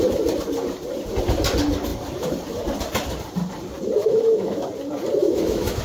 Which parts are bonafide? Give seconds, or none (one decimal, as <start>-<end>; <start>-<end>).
0.0-4.0; 4.7-5.2